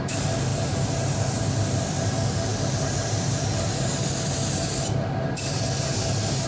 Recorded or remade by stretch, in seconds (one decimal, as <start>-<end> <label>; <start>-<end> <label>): 0.0-6.5 recorded